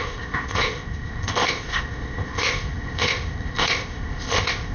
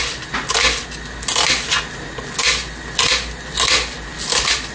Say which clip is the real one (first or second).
second